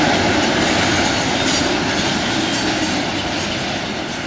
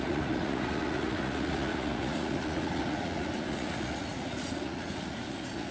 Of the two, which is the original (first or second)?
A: first